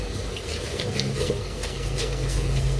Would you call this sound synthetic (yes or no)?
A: yes